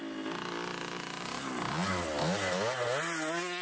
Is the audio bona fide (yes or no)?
yes